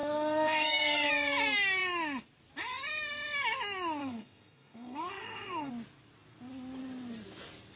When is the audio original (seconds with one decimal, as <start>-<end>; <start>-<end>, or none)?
1.1-4.0; 5.7-7.8